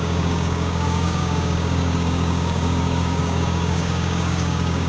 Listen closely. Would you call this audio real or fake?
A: fake